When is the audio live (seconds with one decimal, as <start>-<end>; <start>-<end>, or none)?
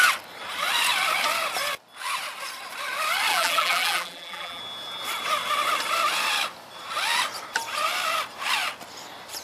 0.0-3.3; 4.6-9.4